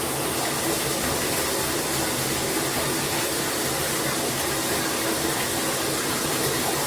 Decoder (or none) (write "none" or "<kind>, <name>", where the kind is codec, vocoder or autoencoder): vocoder, BigVGAN v2